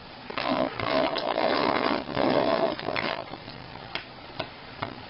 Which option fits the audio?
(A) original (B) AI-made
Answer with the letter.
B